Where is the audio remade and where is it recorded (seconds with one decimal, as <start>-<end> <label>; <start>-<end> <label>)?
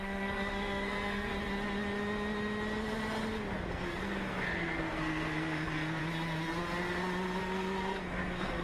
0.0-1.3 remade; 1.3-3.7 recorded; 3.7-6.0 remade; 6.0-7.4 recorded; 7.4-8.6 remade